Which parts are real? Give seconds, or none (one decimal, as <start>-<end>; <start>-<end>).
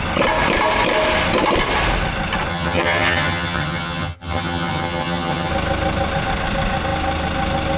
0.0-2.5; 5.5-7.8